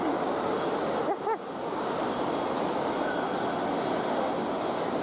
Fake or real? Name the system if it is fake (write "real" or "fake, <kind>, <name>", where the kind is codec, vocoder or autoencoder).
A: real